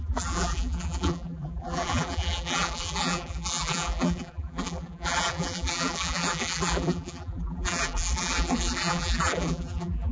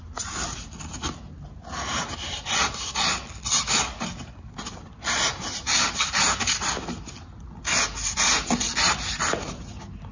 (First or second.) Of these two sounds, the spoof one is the first